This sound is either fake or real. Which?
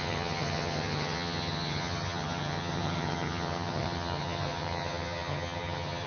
fake